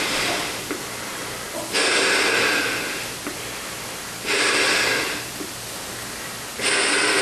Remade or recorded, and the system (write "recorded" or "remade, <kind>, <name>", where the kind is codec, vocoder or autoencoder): recorded